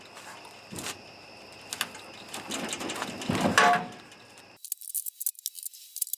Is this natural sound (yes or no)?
yes